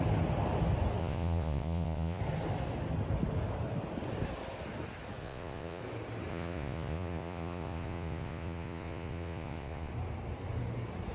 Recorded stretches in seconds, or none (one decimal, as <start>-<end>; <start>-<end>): 0.0-1.0; 2.2-5.2; 5.8-6.3; 9.9-11.1